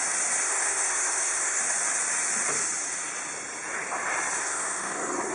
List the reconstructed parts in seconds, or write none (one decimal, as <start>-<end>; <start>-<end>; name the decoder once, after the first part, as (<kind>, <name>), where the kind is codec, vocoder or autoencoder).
0.4-1.6 (codec, SNAC); 4.4-5.3